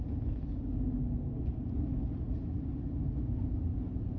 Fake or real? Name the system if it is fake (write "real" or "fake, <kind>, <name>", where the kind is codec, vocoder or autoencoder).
real